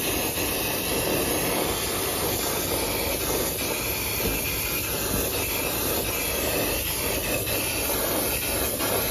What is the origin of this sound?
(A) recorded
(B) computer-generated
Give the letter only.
A